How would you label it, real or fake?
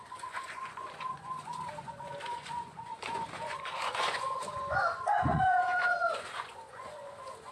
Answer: fake